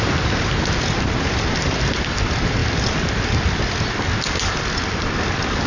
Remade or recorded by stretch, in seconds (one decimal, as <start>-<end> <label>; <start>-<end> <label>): 0.0-5.7 recorded